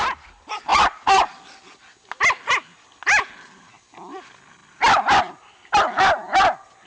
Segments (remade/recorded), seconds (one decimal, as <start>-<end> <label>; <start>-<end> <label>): 0.0-0.7 recorded; 0.7-1.3 remade; 1.3-6.9 recorded